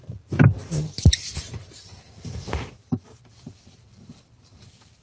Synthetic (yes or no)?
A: yes